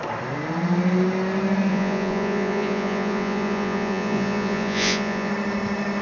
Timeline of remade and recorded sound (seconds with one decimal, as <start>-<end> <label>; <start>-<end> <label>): 0.0-1.7 recorded; 1.7-5.3 remade; 5.3-6.0 recorded